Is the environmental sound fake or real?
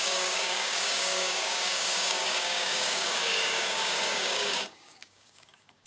fake